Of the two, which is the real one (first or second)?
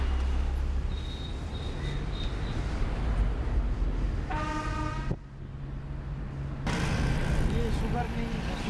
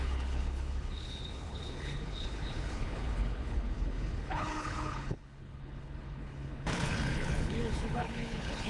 first